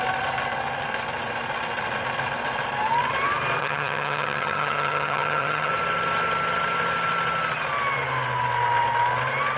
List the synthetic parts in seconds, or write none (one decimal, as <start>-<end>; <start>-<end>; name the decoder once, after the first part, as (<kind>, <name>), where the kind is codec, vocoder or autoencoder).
3.6-5.7 (vocoder, HiFi-GAN)

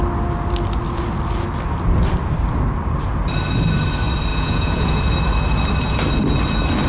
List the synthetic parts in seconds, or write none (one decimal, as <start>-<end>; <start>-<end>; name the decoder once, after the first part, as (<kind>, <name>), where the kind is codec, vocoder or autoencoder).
4.3-5.0 (vocoder, Vocos)

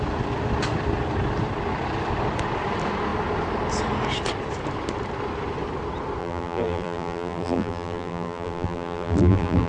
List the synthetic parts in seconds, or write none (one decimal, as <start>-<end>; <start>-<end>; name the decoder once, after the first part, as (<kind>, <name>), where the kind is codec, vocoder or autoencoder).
6.2-9.7 (vocoder, BigVGAN v2)

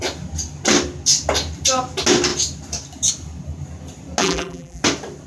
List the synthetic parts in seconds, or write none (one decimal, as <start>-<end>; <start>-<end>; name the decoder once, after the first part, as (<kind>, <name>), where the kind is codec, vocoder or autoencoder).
4.2-4.8 (vocoder, BigVGAN v2)

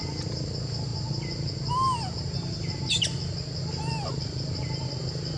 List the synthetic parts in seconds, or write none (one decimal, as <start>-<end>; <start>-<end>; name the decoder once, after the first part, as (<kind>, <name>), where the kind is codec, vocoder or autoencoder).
none

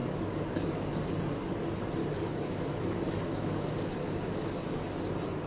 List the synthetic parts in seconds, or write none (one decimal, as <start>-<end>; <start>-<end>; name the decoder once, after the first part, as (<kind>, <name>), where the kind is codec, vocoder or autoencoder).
0.0-1.1 (codec, DAC); 2.0-4.8

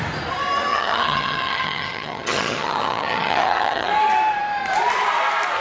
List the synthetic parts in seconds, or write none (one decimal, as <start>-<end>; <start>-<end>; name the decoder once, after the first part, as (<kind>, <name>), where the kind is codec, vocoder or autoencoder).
0.7-3.9 (vocoder, HiFi-GAN)

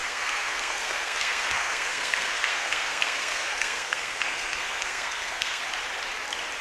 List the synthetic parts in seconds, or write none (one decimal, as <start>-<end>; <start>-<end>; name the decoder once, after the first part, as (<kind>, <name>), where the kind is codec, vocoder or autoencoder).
0.0-5.6 (codec, SNAC)